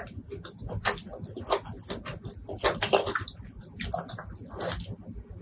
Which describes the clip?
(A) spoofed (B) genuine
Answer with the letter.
B